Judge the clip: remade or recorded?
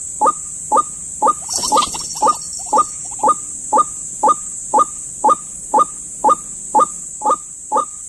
recorded